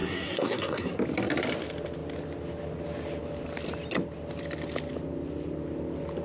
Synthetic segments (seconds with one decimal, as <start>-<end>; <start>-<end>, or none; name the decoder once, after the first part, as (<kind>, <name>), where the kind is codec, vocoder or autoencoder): 0.0-1.0 (codec, SNAC)